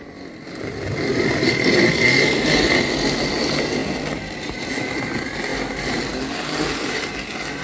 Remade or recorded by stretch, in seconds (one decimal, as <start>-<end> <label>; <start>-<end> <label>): 0.0-7.6 recorded